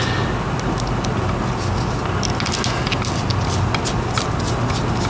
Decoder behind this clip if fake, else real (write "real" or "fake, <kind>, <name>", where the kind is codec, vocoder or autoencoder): real